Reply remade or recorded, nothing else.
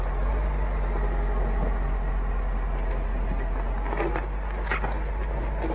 recorded